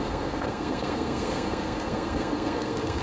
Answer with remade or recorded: remade